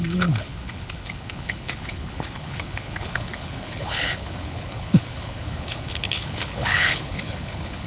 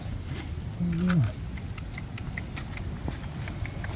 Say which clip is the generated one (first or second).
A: first